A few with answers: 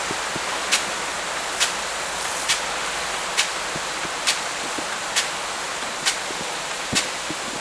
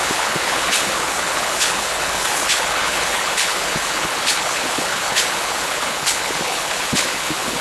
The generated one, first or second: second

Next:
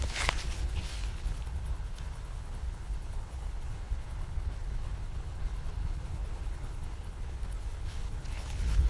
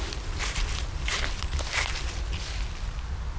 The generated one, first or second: first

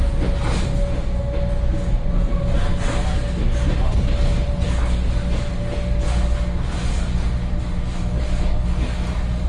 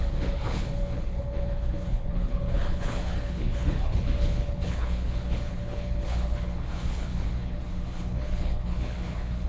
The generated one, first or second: second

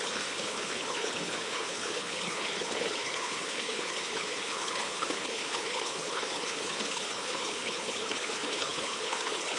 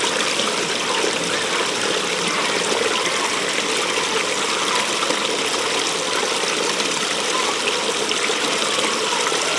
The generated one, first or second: first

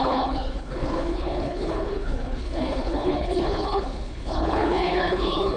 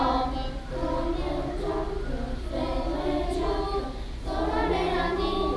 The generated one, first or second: first